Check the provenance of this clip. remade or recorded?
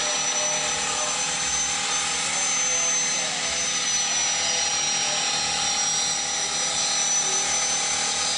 recorded